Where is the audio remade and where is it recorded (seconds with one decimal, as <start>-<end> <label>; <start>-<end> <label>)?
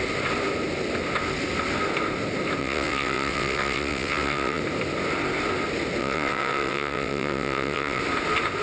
0.0-2.6 recorded; 2.6-4.6 remade; 4.6-6.0 recorded; 6.0-8.0 remade; 8.0-8.6 recorded